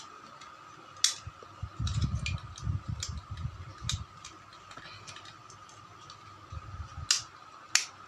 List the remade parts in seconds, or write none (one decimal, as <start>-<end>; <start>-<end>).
none